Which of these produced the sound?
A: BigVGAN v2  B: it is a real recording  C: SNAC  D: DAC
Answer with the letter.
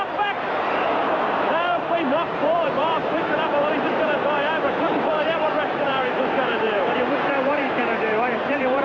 A